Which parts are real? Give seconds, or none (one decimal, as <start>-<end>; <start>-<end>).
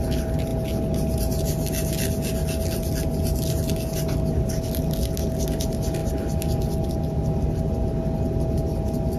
0.0-9.2